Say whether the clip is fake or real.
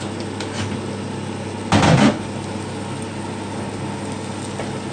real